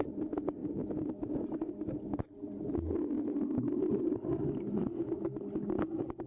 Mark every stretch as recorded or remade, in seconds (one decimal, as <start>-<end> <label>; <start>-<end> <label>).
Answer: 0.0-6.3 recorded